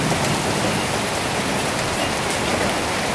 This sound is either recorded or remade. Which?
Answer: recorded